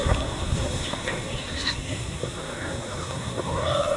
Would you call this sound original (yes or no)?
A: no